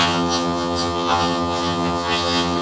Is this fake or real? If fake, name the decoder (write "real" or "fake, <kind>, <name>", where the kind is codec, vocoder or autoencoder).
fake, vocoder, HiFi-GAN